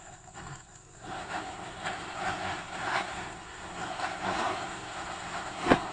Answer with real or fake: fake